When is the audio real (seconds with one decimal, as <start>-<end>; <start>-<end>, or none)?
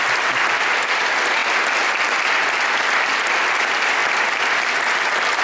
0.0-5.4